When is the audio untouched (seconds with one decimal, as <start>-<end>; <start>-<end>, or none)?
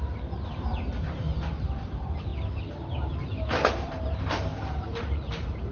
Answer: 2.3-3.1